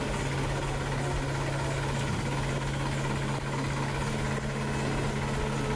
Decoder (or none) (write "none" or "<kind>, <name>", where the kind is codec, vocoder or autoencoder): none